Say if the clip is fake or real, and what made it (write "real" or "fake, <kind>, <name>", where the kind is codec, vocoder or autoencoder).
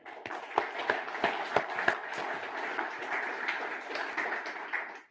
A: real